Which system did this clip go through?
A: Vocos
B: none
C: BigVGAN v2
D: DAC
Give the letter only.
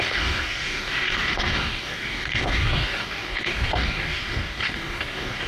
D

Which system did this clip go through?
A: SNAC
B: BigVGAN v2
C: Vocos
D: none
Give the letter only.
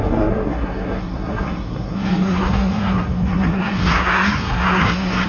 A